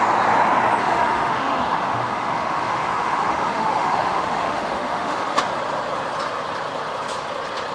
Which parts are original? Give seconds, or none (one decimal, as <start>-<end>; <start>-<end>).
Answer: 0.0-0.8; 5.4-7.7